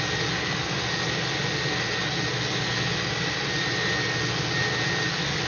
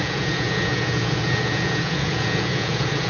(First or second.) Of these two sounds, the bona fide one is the first